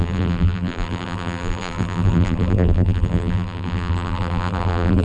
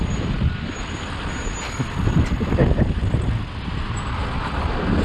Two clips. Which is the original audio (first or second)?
second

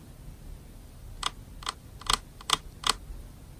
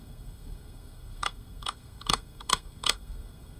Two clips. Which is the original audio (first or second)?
first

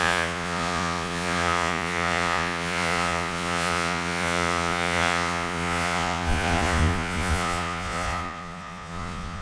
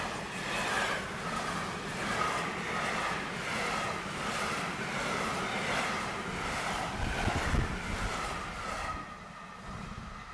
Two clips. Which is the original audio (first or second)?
second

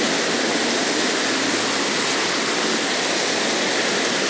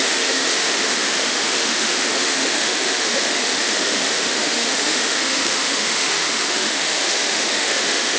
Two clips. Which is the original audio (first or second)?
first